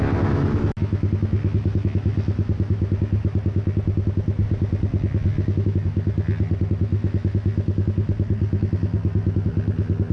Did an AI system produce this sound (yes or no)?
no